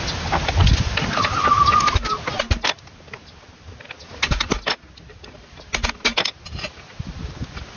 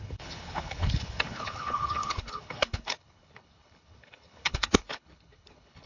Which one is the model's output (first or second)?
second